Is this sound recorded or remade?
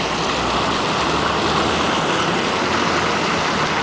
recorded